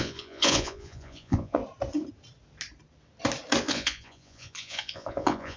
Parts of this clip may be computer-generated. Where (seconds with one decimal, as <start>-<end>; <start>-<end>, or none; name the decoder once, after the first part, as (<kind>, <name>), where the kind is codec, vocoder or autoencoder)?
0.0-1.6 (vocoder, Vocos); 3.6-5.6